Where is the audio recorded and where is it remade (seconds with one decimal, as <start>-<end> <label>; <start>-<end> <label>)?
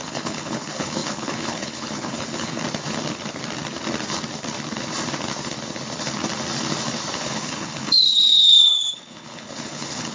0.0-2.6 remade; 2.6-7.2 recorded; 7.2-10.1 remade